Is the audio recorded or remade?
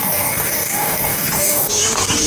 remade